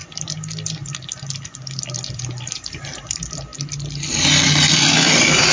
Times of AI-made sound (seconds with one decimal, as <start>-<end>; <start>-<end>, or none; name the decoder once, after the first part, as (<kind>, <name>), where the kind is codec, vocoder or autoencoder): 0.0-3.5 (vocoder, BigVGAN v2); 4.7-5.5